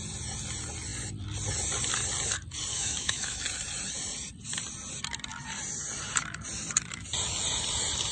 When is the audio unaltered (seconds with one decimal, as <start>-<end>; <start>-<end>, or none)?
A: 0.0-2.7; 3.4-8.1